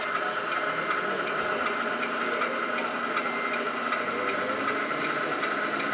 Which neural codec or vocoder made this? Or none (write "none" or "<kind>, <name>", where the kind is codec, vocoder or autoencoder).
none